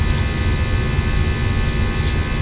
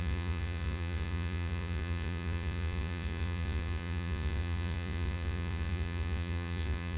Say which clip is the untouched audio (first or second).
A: first